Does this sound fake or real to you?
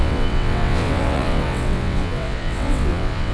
fake